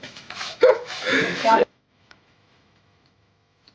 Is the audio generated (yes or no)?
yes